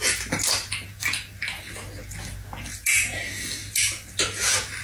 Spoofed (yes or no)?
no